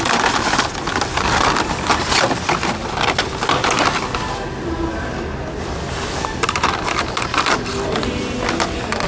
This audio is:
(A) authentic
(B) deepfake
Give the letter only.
A